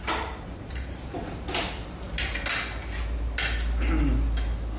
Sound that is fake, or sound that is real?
real